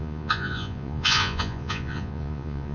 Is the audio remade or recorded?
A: remade